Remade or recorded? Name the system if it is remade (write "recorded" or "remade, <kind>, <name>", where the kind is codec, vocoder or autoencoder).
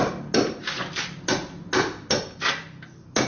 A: recorded